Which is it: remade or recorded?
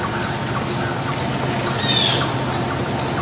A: recorded